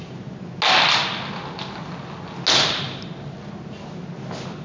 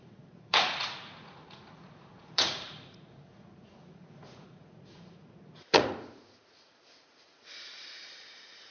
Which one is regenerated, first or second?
second